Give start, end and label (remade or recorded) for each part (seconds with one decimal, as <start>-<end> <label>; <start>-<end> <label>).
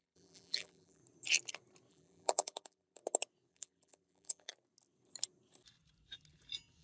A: 0.0-1.0 remade; 1.0-1.9 recorded; 1.9-3.0 remade; 3.0-3.5 recorded; 3.5-4.5 remade; 4.5-6.8 recorded